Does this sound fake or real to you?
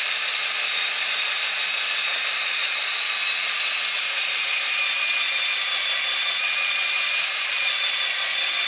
real